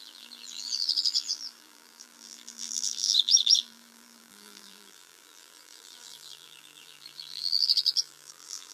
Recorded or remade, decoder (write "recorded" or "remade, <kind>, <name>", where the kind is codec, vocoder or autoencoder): remade, vocoder, BigVGAN v2